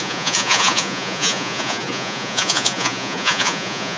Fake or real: fake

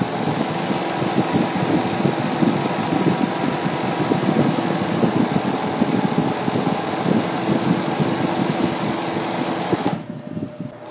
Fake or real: real